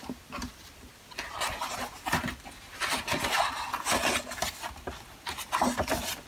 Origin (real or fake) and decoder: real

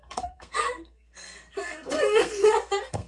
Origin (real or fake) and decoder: fake, codec, SNAC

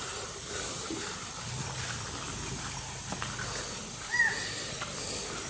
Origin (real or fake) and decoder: real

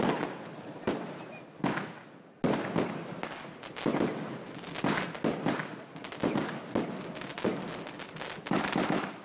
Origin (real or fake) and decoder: real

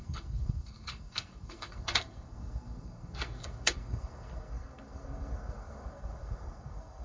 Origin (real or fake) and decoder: fake, codec, SNAC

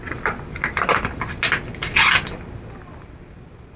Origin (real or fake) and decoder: real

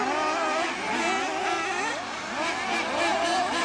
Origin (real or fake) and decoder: real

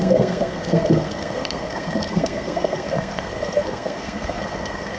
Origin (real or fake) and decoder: fake, codec, SNAC